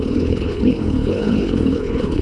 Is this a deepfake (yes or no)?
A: yes